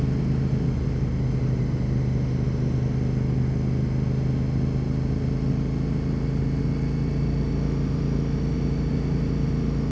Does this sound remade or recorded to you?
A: recorded